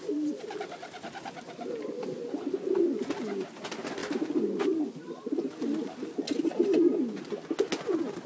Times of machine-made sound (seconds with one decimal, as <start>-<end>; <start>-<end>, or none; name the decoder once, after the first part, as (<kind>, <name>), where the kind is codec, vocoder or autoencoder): none